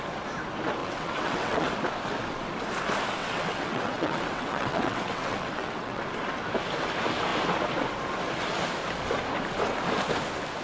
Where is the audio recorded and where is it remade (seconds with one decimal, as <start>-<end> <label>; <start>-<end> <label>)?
0.0-0.8 recorded; 0.8-1.7 remade; 1.7-3.2 recorded; 3.2-6.0 remade; 6.0-10.6 recorded

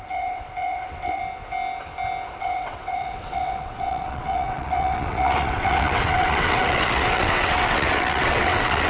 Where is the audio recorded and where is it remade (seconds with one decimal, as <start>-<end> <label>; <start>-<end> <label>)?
0.0-1.2 remade; 1.2-2.4 recorded; 2.4-8.9 remade

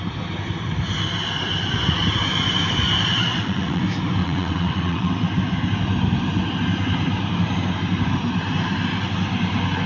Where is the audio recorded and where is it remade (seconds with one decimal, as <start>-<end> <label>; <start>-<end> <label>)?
0.0-3.1 recorded; 3.1-3.8 remade; 3.8-4.2 recorded; 4.2-5.1 remade; 5.1-9.9 recorded

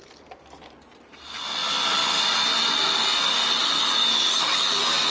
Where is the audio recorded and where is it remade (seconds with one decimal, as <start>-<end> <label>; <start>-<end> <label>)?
0.0-5.1 recorded

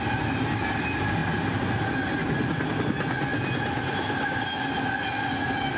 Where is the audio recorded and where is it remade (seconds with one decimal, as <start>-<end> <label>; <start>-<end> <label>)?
0.0-5.8 recorded

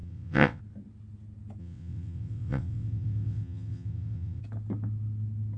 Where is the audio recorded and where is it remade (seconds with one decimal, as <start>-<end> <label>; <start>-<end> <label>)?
0.0-0.6 remade; 0.6-1.6 recorded; 1.6-4.4 remade; 4.4-5.6 recorded